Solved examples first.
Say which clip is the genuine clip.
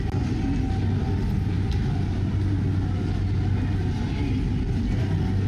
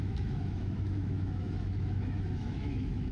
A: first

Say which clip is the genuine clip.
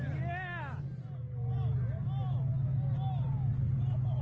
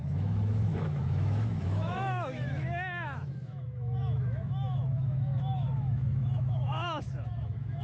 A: first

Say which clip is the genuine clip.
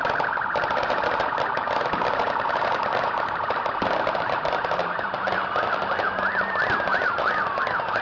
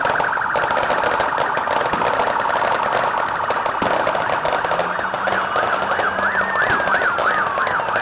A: second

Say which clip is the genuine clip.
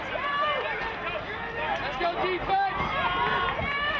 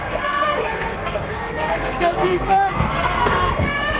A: first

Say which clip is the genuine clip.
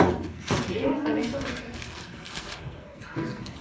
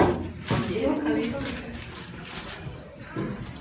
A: second